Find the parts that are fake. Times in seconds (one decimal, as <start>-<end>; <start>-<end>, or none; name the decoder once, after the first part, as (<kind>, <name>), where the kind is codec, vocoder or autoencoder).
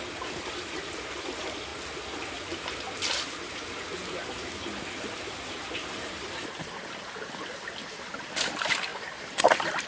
0.0-1.7 (vocoder, BigVGAN v2); 6.1-8.9; 9.4-9.9